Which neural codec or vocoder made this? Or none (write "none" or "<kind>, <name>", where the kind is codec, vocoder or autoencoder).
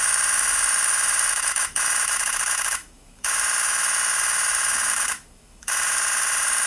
autoencoder, DAC-VAE